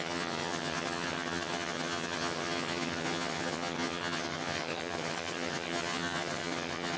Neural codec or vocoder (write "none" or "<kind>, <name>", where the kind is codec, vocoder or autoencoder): vocoder, HiFi-GAN